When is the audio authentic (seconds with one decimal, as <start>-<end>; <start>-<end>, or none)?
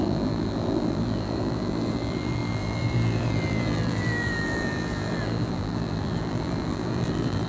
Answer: none